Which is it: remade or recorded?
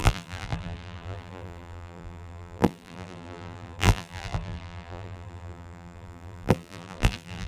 remade